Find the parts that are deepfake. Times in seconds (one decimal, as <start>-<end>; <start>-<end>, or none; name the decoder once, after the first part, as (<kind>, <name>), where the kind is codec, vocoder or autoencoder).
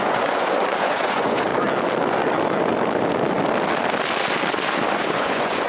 0.0-1.5 (vocoder, Vocos); 4.9-5.7